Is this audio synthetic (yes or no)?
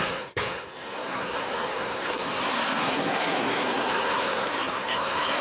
yes